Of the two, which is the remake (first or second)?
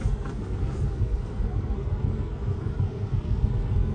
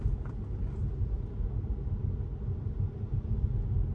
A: first